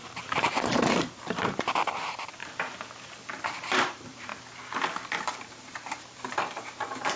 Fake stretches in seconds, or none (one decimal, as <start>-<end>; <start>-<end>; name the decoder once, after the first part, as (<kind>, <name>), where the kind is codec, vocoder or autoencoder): 0.0-2.4 (vocoder, BigVGAN v2); 3.3-4.3; 5.3-7.2